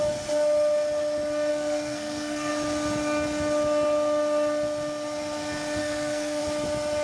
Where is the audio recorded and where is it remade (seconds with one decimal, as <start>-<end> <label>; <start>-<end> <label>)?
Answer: 0.0-1.5 recorded; 1.5-2.5 remade; 2.5-5.8 recorded; 5.8-6.4 remade; 6.4-7.0 recorded